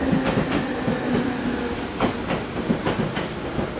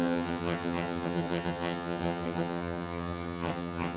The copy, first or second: second